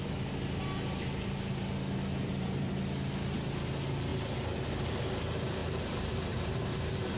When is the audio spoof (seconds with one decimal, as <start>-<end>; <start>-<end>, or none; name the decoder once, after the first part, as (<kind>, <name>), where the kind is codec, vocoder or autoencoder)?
2.1-2.7 (vocoder, BigVGAN v2); 5.6-7.2